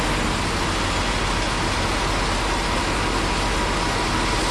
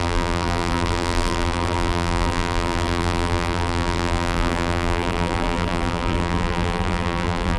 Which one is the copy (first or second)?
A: second